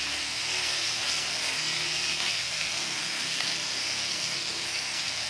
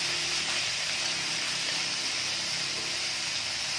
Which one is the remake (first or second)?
first